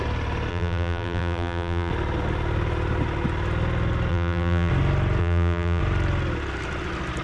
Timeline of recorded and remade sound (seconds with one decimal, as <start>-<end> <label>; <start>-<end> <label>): 0.0-0.5 recorded; 0.5-1.9 remade; 1.9-4.1 recorded; 4.1-4.7 remade; 4.7-5.2 recorded; 5.2-5.8 remade; 5.8-7.2 recorded